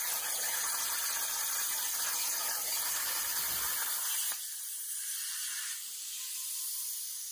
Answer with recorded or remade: recorded